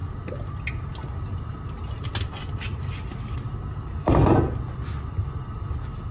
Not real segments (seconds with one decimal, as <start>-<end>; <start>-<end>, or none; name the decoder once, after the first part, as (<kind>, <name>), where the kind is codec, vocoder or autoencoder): none